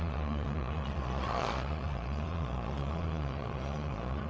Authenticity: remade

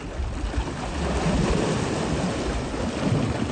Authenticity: recorded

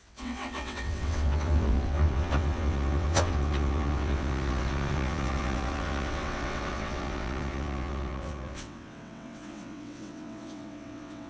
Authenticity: remade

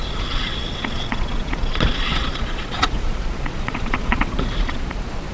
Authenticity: remade